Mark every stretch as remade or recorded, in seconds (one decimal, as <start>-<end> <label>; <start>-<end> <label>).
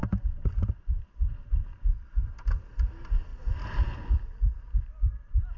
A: 0.0-5.6 recorded